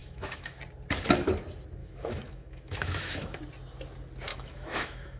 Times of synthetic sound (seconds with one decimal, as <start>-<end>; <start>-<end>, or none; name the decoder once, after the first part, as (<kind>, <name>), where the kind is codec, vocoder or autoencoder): 0.0-0.6 (autoencoder, DAC-VAE); 1.8-3.4; 4.3-5.2